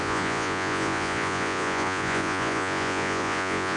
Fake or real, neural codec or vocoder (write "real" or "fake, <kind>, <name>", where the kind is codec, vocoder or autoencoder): fake, vocoder, Vocos